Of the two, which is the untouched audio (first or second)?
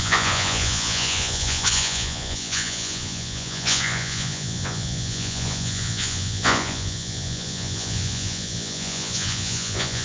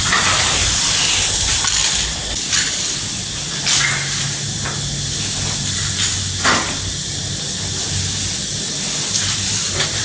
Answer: second